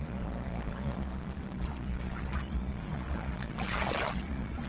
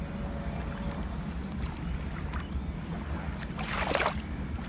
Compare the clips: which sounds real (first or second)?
second